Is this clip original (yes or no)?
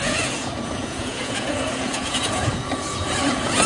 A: no